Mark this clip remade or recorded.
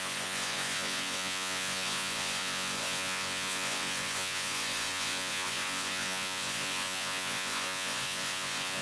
remade